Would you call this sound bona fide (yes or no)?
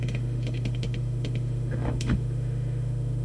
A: no